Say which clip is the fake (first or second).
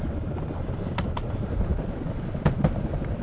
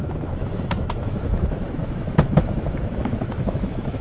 second